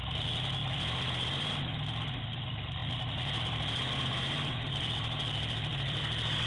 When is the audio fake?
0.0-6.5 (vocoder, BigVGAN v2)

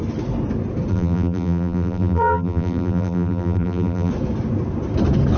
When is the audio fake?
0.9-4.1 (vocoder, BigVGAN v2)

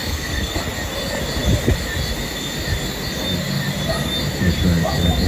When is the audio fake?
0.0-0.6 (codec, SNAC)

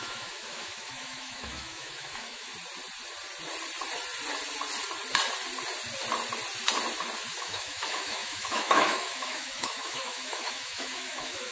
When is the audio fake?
0.0-2.5 (autoencoder, DAC-VAE); 7.4-11.5